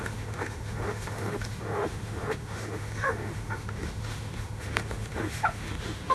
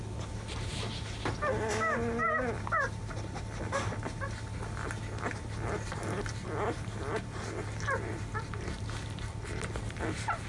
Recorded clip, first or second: second